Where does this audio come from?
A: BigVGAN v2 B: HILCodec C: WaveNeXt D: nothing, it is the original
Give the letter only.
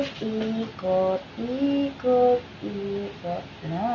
D